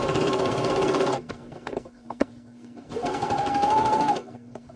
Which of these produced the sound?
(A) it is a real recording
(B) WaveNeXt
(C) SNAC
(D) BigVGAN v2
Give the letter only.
C